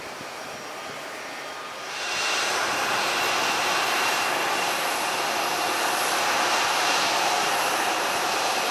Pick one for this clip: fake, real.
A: real